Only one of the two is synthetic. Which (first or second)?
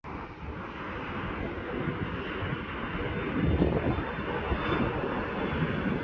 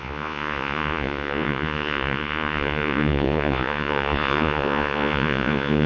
second